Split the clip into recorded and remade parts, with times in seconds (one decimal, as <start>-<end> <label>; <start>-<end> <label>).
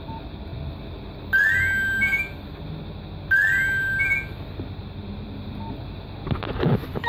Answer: 0.0-7.1 recorded